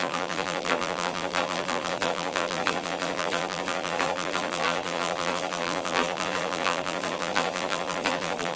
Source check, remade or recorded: remade